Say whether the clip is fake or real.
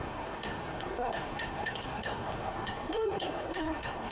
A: fake